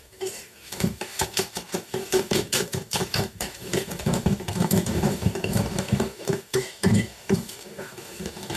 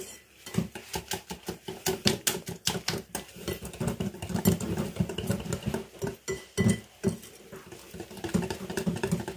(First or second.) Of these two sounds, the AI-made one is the first